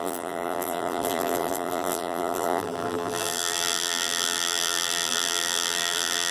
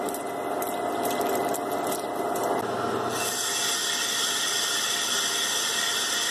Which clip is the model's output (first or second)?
first